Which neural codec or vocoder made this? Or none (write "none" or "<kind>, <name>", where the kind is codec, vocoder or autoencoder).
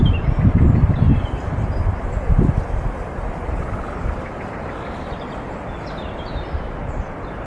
vocoder, BigVGAN v2